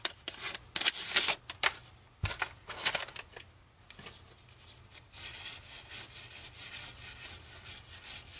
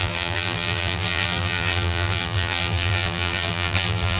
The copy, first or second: second